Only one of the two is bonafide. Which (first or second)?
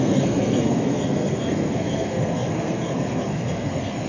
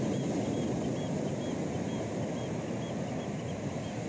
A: second